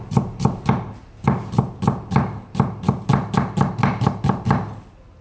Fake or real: real